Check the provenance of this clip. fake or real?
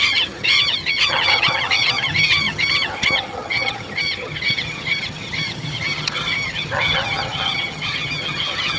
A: fake